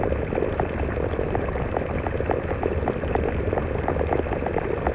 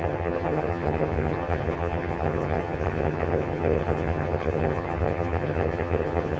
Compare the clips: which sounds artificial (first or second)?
second